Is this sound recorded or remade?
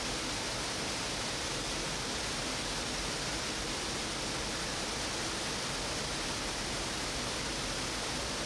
recorded